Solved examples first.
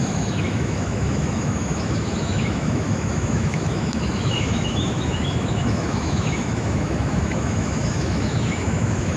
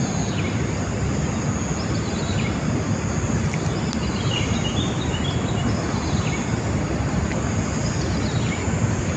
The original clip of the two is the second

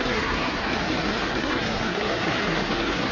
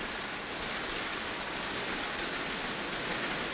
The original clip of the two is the second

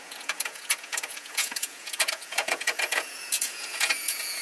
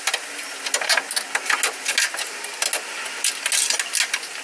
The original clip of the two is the second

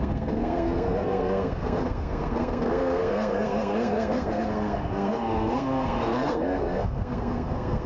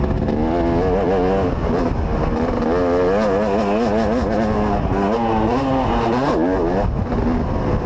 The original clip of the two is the second